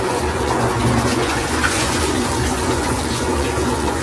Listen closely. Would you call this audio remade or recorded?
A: remade